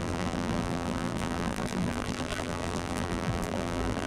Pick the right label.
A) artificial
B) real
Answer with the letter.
A